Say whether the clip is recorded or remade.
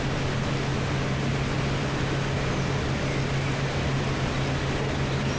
recorded